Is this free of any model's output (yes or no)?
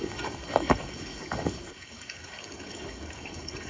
no